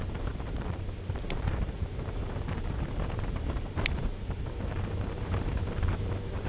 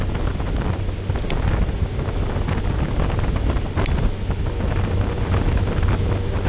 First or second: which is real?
second